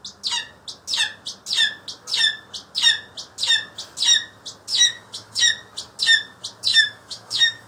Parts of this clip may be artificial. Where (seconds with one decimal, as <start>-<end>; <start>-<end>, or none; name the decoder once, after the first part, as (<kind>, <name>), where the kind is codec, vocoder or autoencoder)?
4.7-5.4 (autoencoder, DAC-VAE); 6.7-7.7